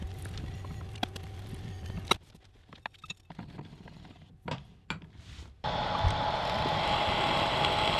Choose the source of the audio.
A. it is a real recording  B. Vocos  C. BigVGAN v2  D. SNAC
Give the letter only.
A